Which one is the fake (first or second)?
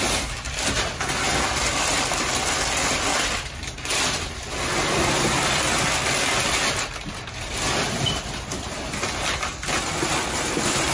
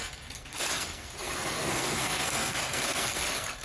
second